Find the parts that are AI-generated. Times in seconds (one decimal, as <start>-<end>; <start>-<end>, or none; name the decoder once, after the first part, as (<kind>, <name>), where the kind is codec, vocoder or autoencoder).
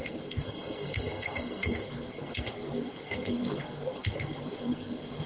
0.0-5.3 (codec, SNAC)